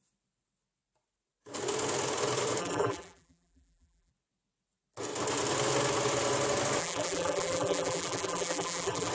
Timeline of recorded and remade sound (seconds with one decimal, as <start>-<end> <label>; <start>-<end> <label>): 0.0-2.6 recorded; 2.6-4.1 remade; 4.1-6.8 recorded; 6.8-9.1 remade